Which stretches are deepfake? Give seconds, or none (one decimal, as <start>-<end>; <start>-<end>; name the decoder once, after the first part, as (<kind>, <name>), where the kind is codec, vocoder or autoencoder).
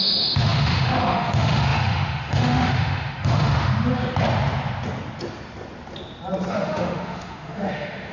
0.0-3.7 (autoencoder, DAC-VAE); 6.5-8.1